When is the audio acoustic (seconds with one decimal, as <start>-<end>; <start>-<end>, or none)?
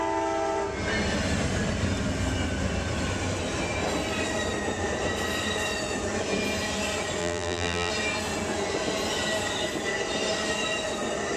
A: 0.0-7.2; 7.9-11.4